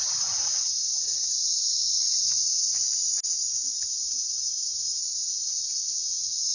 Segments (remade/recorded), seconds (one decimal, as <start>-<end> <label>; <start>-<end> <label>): 0.0-6.5 recorded